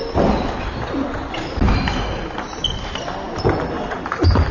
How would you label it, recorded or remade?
recorded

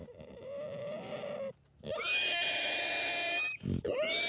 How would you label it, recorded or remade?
recorded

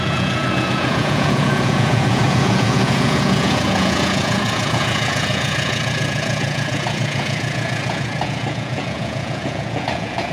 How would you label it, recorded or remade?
remade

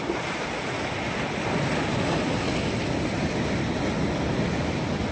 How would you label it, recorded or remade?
recorded